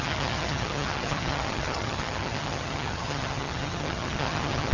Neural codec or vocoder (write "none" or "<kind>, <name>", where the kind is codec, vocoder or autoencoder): vocoder, HiFi-GAN